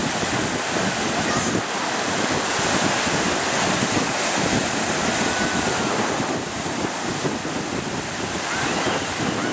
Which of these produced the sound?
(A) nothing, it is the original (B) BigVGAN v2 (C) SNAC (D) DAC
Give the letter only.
A